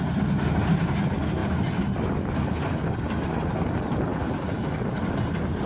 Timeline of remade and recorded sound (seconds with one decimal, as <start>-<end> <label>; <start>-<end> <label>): 0.0-4.1 recorded; 4.1-4.7 remade; 4.7-5.7 recorded